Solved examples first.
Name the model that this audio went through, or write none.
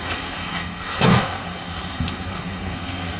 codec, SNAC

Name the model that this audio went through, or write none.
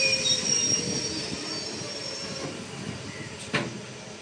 none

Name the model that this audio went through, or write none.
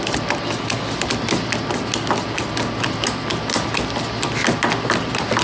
none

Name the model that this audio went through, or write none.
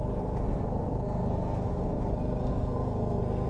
codec, SNAC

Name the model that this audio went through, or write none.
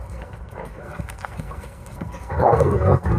codec, SNAC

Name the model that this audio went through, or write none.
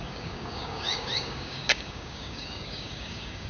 codec, DAC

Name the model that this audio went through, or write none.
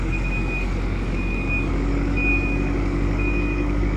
codec, DAC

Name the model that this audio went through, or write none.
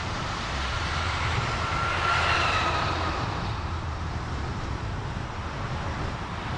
vocoder, BigVGAN v2